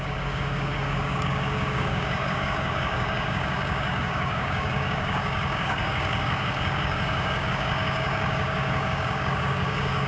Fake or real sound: fake